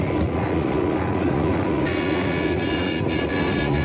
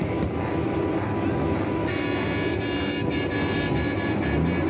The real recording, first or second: second